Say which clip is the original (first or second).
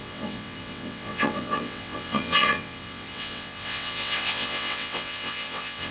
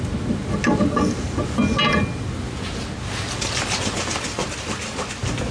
second